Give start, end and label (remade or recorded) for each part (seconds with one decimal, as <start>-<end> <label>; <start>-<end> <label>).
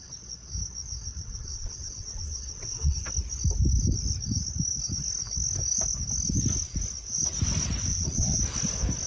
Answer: 0.0-1.1 recorded; 1.1-3.1 remade; 3.1-7.9 recorded; 7.9-8.4 remade; 8.4-9.1 recorded